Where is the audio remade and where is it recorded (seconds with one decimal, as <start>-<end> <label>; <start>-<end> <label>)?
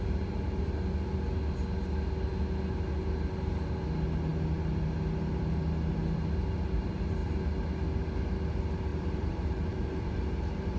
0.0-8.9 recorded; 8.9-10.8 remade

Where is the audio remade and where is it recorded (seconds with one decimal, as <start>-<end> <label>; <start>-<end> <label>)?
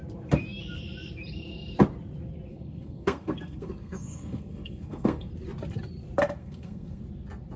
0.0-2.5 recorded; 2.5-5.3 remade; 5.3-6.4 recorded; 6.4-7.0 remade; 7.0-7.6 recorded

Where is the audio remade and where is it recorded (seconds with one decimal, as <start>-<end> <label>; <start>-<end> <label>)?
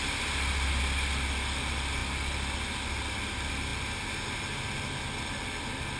0.0-6.0 recorded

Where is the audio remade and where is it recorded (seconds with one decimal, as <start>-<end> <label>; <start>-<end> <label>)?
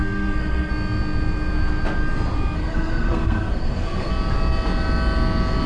0.0-0.7 remade; 0.7-2.6 recorded; 2.6-4.1 remade; 4.1-5.7 recorded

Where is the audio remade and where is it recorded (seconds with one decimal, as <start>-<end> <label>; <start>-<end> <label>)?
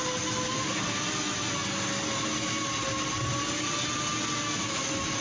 0.0-5.2 recorded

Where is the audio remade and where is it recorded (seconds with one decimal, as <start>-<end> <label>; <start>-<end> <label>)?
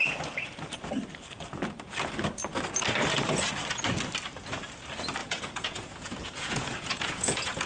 0.0-5.2 recorded; 5.2-7.7 remade